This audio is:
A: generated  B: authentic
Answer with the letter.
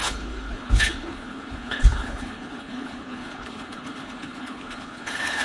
A